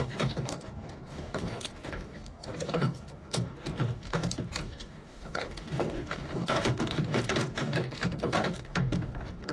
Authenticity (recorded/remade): remade